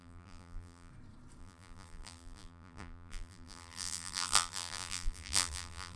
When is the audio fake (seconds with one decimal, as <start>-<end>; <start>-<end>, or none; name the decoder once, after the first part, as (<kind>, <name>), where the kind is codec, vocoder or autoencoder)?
0.0-0.9 (vocoder, BigVGAN v2); 1.4-6.0